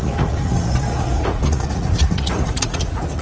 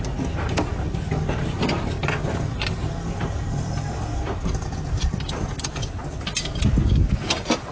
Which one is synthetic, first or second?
first